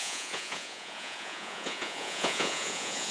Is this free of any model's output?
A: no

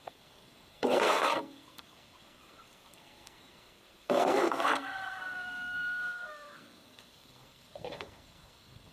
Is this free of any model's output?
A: no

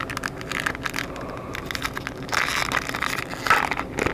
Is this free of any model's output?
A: yes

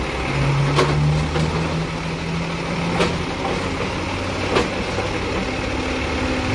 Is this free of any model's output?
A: yes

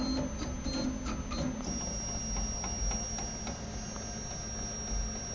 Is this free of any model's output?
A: yes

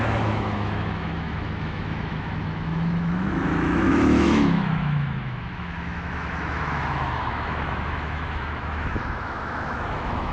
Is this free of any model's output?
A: no